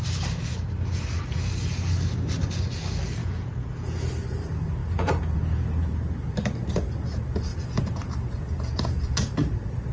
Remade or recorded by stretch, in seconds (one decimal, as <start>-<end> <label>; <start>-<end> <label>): 0.0-3.2 recorded; 3.2-4.1 remade; 4.1-4.8 recorded; 4.8-5.9 remade; 5.9-7.5 recorded; 7.5-9.3 remade; 9.3-9.9 recorded